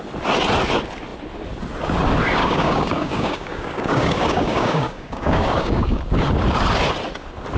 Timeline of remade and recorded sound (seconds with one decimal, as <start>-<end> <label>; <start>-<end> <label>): 0.0-2.4 recorded; 2.4-6.0 remade; 6.0-7.6 recorded